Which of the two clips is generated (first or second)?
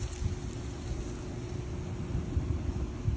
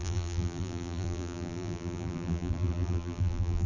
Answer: second